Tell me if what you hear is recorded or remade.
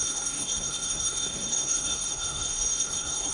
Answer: remade